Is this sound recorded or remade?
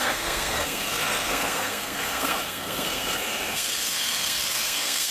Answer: remade